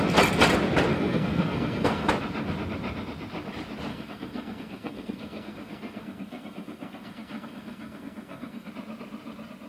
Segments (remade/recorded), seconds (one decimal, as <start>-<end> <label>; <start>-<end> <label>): 0.0-0.9 recorded; 0.9-2.1 remade; 2.1-3.9 recorded; 3.9-8.7 remade; 8.7-9.7 recorded